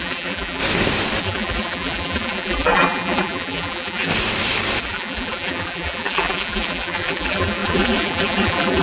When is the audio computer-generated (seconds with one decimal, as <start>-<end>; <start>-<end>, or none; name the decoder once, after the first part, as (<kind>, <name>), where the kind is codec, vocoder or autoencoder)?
0.0-0.6 (vocoder, BigVGAN v2); 1.2-4.1; 4.8-8.8